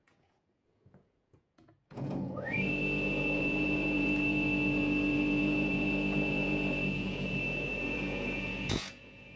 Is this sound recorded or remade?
remade